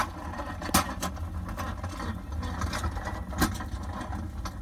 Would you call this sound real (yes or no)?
yes